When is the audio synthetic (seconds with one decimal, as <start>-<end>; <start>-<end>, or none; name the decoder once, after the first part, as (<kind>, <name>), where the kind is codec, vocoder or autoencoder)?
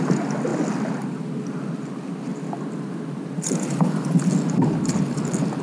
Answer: none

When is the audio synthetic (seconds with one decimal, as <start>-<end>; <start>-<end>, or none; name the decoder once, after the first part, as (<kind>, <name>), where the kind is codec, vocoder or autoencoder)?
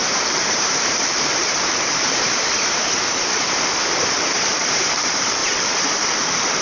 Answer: 0.0-6.6 (vocoder, BigVGAN v2)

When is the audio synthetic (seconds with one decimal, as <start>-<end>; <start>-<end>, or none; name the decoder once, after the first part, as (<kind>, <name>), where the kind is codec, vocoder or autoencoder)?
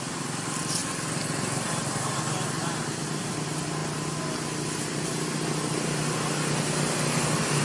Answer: none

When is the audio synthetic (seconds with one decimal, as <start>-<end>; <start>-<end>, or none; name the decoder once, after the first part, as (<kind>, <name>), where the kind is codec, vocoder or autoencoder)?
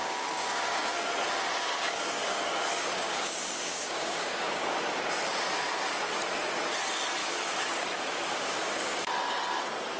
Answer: 0.0-1.1 (codec, DAC); 1.5-4.9; 7.2-9.1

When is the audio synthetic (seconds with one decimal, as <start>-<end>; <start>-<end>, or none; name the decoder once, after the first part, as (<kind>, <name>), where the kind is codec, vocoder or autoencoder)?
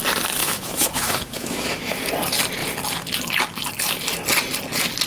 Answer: 0.4-2.1 (autoencoder, DAC-VAE)